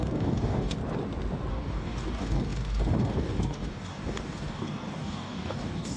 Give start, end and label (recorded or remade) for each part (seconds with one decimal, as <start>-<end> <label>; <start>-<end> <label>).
0.0-0.8 remade; 0.8-1.5 recorded; 1.5-6.0 remade